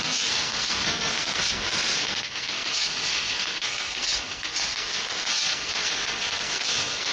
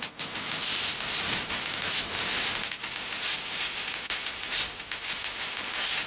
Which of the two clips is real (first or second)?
second